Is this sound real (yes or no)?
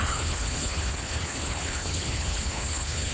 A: no